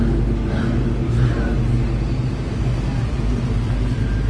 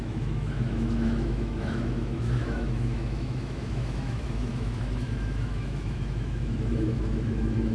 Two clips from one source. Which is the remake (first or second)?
second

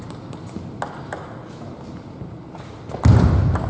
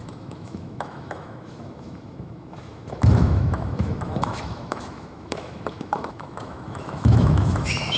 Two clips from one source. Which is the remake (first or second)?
second